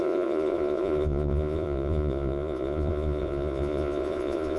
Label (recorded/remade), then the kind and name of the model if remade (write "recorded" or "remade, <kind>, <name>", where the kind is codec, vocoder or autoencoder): remade, vocoder, Vocos